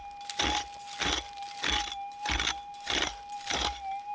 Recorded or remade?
recorded